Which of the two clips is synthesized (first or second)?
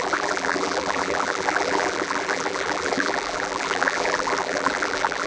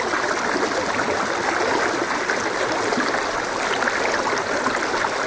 first